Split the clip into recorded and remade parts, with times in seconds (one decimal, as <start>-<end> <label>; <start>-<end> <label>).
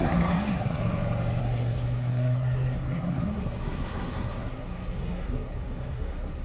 0.0-0.8 remade; 0.8-1.4 recorded; 1.4-6.4 remade